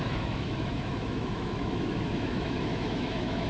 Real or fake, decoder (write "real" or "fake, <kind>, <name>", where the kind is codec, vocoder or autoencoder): fake, autoencoder, DAC-VAE